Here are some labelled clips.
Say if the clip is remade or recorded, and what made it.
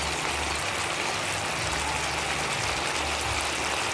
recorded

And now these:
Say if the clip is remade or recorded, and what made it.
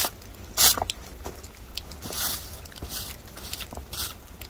recorded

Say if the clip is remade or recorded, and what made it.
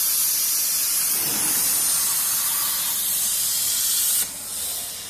recorded